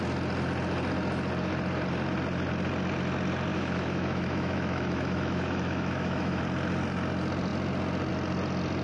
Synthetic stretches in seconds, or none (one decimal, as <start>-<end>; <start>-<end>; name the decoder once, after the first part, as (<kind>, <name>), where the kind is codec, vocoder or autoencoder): 3.5-6.4 (autoencoder, DAC-VAE)